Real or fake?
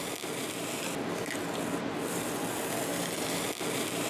real